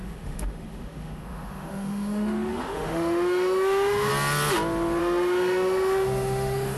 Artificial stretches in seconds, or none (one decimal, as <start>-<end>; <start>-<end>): 0.0-4.1; 5.0-6.8